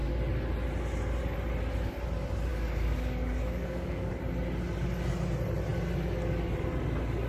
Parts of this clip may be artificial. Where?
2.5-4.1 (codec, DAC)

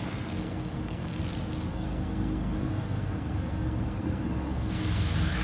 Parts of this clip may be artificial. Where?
0.0-1.2 (codec, SNAC); 1.7-5.4

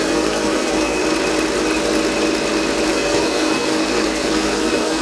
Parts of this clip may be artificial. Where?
0.0-1.0 (codec, SNAC); 2.9-5.0